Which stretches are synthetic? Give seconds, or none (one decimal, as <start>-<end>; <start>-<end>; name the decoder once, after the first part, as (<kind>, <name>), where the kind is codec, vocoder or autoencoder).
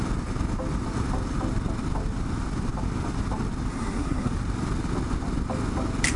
3.7-4.3 (codec, SNAC)